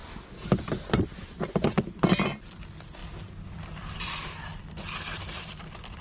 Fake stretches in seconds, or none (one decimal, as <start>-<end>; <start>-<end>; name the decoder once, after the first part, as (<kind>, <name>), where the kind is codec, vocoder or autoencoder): 0.0-1.4 (vocoder, BigVGAN v2)